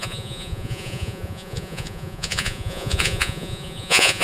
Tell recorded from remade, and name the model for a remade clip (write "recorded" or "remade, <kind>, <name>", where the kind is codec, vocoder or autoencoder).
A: remade, vocoder, Vocos